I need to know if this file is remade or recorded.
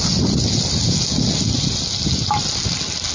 recorded